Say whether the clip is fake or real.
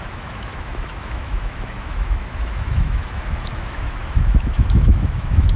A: fake